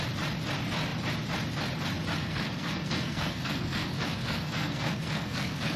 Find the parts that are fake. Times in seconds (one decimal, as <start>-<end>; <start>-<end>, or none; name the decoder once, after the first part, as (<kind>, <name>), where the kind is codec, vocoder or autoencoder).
2.2-5.8 (codec, SNAC)